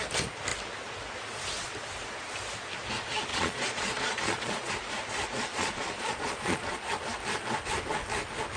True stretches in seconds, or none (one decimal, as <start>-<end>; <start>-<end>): 0.0-3.3; 4.7-5.5; 6.9-8.6